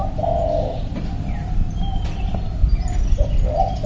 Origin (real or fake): real